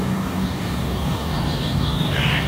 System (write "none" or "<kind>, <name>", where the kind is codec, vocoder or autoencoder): codec, DAC